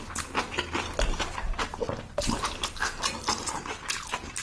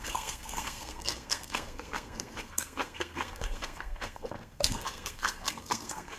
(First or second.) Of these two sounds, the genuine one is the first